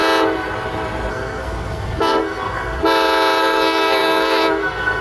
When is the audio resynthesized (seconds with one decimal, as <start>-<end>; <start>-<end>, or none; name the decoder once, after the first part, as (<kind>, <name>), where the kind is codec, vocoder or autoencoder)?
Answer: 1.1-2.8 (codec, SNAC); 3.4-5.0